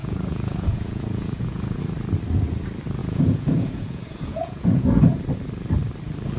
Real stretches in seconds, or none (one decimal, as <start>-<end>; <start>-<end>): 1.8-3.0; 5.0-6.4